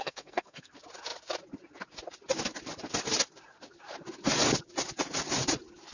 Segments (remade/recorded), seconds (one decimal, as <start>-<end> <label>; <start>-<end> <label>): 0.0-0.7 remade; 0.7-5.9 recorded